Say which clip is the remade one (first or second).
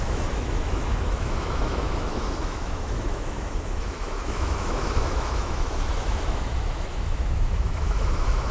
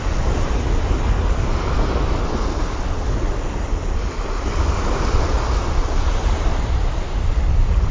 first